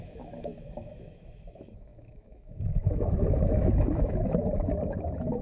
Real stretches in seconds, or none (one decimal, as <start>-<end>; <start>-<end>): none